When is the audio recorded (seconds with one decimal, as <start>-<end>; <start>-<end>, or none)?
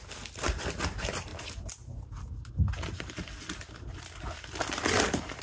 1.3-4.3